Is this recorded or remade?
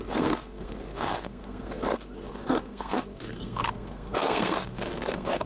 remade